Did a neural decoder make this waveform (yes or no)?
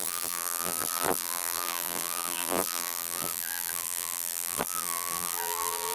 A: yes